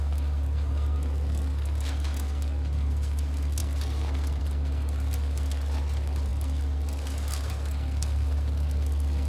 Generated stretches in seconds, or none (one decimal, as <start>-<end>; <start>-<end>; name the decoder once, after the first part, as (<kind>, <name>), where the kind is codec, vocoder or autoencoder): 0.0-9.3 (codec, SNAC)